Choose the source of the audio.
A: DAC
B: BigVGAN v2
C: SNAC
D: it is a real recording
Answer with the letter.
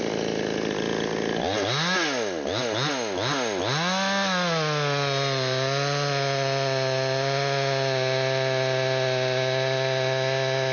D